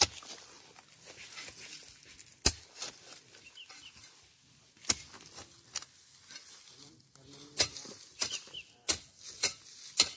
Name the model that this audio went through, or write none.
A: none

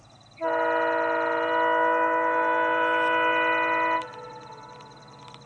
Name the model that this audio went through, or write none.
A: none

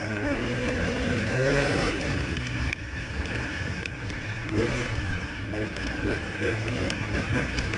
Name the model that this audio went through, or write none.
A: codec, SNAC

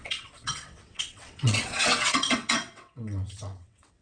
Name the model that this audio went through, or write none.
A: vocoder, WaveNeXt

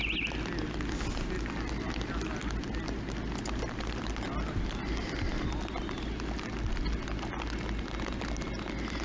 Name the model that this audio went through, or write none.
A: none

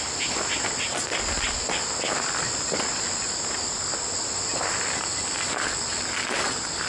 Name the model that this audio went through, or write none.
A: none